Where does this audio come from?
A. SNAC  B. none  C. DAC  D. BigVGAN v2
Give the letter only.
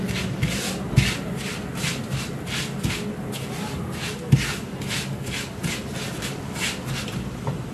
B